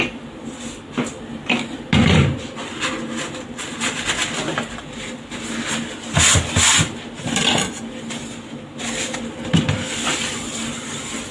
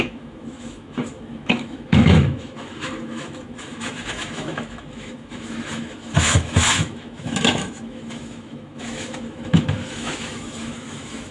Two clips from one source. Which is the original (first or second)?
first